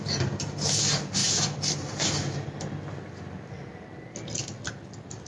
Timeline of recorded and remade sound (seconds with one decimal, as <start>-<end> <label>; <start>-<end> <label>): 0.0-5.3 recorded

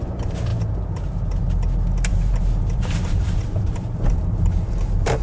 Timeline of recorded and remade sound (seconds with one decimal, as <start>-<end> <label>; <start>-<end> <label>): 0.0-2.1 recorded; 2.1-5.2 remade

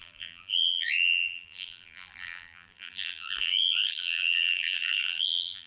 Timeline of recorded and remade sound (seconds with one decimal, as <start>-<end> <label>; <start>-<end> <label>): 0.0-5.7 remade

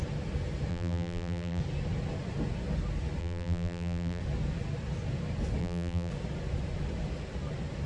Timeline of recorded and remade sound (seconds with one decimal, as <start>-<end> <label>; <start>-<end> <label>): 0.0-0.7 recorded; 0.7-1.6 remade; 1.6-3.2 recorded; 3.2-4.2 remade; 4.2-5.6 recorded; 5.6-6.1 remade; 6.1-7.9 recorded

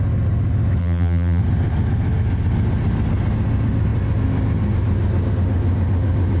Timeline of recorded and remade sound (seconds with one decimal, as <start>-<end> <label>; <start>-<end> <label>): 0.0-0.8 recorded; 0.8-1.4 remade; 1.4-6.4 recorded

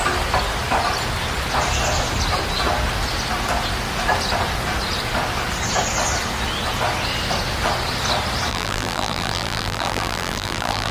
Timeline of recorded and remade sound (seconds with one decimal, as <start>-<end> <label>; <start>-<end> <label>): 0.0-8.5 recorded; 8.5-10.9 remade

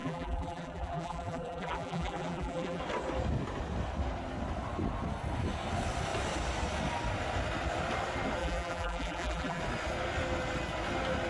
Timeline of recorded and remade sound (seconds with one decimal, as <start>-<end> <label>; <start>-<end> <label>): 0.0-2.8 remade; 2.8-8.4 recorded; 8.4-9.6 remade; 9.6-11.3 recorded

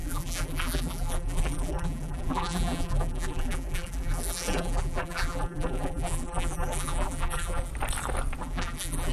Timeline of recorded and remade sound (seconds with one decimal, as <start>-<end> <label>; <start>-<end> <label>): 0.0-7.7 remade; 7.7-8.4 recorded; 8.4-9.1 remade